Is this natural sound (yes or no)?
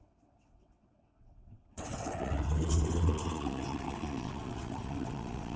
no